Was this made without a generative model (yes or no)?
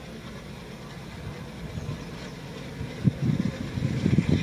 yes